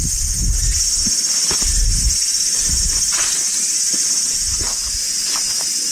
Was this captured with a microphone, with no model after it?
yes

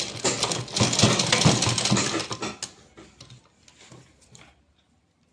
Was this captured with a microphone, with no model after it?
yes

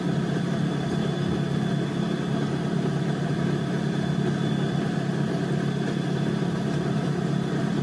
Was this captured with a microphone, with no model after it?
yes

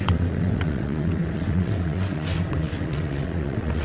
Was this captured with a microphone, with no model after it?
no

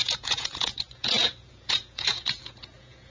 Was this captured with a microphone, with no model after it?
no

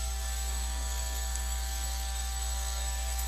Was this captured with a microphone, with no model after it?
no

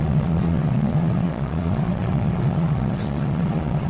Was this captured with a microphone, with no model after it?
no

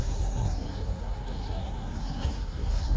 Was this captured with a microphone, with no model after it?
no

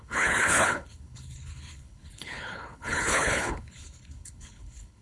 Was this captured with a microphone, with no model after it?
no